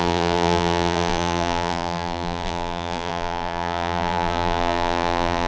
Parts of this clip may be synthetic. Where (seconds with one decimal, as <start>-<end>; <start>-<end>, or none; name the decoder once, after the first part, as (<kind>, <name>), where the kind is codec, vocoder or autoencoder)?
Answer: 0.0-5.5 (vocoder, BigVGAN v2)